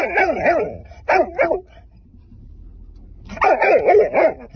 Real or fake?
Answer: real